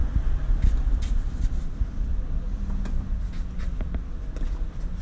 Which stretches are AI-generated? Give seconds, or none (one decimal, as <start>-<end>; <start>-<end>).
none